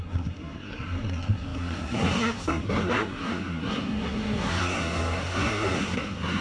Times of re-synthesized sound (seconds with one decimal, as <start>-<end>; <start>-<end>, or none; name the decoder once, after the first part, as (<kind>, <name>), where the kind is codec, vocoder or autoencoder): 0.0-6.4 (codec, SNAC)